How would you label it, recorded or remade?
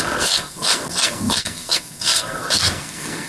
remade